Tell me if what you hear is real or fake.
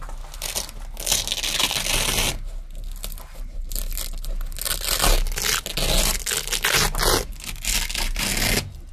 real